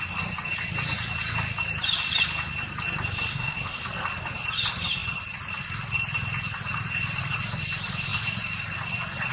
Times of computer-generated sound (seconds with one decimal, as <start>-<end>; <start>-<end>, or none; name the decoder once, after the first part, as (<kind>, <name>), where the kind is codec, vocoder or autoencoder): 3.3-3.8 (codec, SNAC)